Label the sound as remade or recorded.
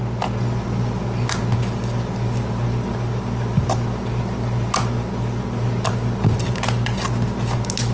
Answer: recorded